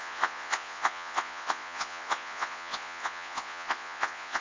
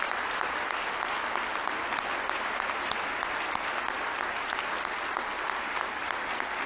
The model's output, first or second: first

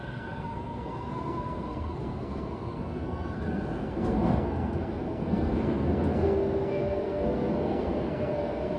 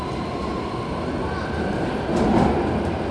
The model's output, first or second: first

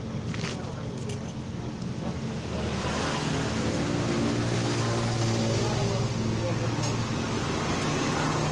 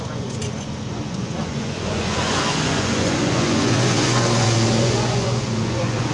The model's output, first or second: second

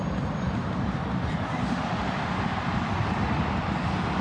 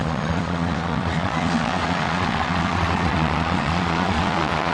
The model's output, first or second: second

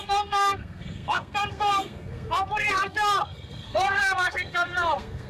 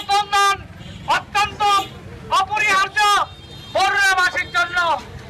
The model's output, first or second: first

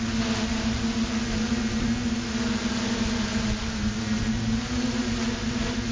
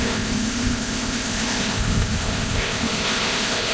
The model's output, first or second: second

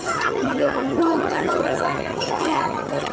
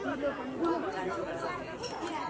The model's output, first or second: first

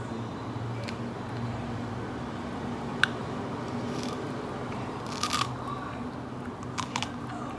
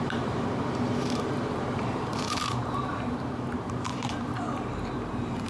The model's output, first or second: second